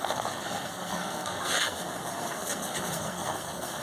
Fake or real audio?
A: fake